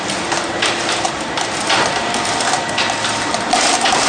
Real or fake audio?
real